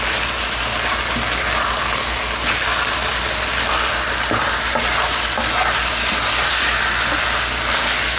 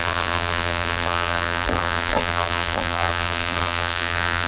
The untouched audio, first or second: first